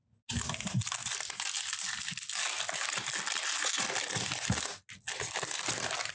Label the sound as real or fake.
real